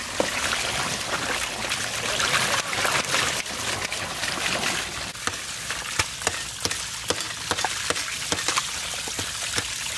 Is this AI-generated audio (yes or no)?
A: no